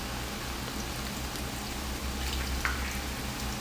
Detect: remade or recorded recorded